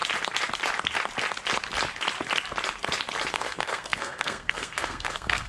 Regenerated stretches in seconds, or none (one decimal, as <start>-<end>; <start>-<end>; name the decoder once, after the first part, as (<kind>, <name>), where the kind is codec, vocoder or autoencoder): 3.3-5.5 (codec, SNAC)